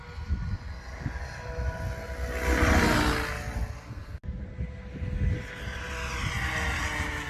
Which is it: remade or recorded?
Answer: recorded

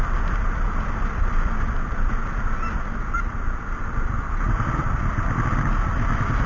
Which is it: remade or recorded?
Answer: recorded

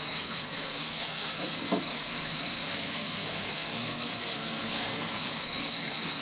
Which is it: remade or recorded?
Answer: remade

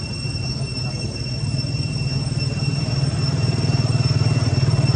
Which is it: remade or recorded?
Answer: recorded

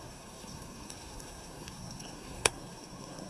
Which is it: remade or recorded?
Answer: remade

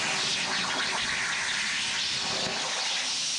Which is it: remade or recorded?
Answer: recorded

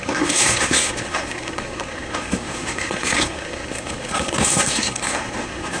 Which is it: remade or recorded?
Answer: remade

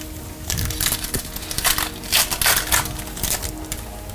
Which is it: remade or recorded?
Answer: recorded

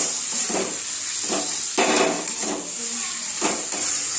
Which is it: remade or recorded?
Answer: recorded